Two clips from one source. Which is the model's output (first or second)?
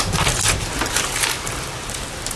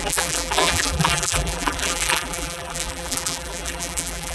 second